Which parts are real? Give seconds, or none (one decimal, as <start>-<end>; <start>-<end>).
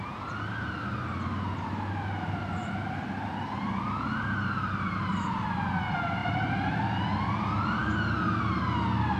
0.0-9.2